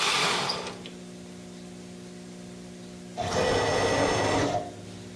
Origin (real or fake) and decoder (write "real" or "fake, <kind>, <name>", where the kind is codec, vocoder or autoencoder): real